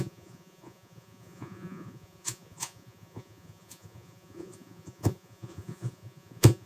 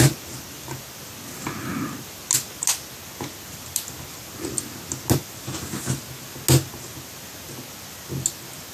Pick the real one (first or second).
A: second